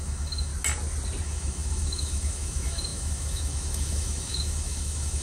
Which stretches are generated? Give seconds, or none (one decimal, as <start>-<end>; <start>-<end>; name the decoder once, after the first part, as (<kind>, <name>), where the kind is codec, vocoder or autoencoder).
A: 0.0-0.5 (autoencoder, DAC-VAE); 1.2-5.2